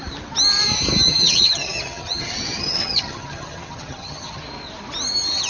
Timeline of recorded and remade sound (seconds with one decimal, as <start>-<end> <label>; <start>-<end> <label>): 0.0-1.1 recorded; 1.1-4.4 remade; 4.4-5.5 recorded